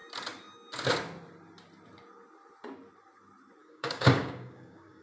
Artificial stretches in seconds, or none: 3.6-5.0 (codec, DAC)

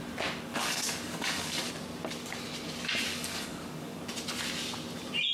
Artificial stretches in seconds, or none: 0.5-1.7 (codec, DAC); 3.1-4.0

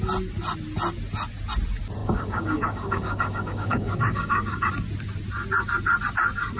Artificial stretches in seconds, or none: 2.0-4.7 (codec, DAC)

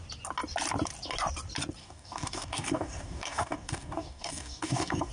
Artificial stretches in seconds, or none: 1.8-5.1 (codec, DAC)

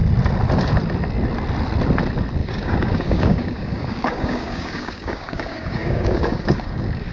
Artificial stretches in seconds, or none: 2.4-7.1 (codec, DAC)